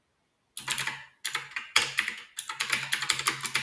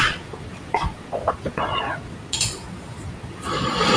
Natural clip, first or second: first